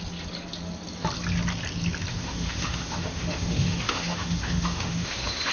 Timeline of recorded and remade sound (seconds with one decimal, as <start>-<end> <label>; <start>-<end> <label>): 0.0-2.1 recorded; 2.1-5.5 remade